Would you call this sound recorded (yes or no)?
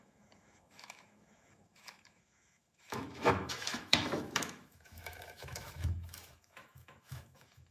no